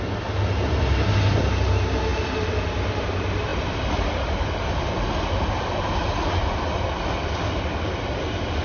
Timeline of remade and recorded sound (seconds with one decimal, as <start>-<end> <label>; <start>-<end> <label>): 0.0-8.6 recorded